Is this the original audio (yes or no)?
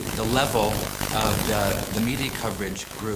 no